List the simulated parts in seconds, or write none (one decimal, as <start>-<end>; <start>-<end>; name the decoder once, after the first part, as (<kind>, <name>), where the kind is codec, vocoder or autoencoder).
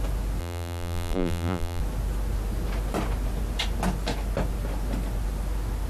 0.4-1.8 (vocoder, BigVGAN v2)